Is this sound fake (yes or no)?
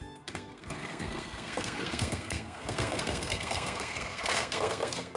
yes